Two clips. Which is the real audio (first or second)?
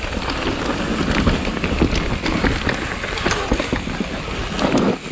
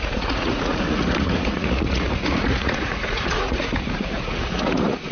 first